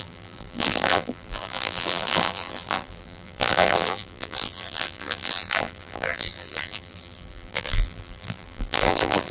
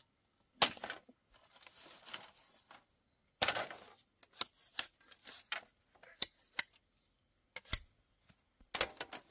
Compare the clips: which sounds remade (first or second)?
first